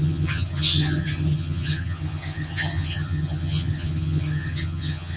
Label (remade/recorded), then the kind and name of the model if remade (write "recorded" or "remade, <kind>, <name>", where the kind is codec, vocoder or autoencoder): remade, vocoder, HiFi-GAN